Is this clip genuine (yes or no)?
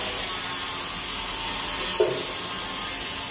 yes